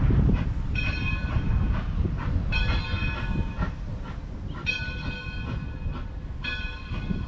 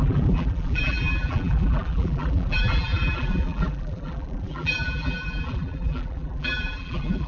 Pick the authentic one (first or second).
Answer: first